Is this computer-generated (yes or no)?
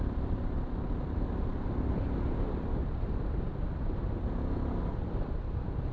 no